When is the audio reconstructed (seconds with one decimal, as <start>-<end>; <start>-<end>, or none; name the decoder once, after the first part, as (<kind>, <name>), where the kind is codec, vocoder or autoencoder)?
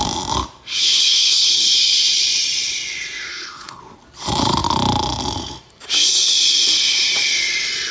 0.7-1.5 (codec, HILCodec); 3.3-3.8